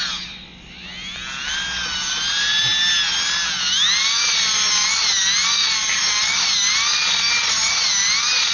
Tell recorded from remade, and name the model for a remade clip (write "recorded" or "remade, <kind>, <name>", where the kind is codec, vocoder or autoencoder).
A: recorded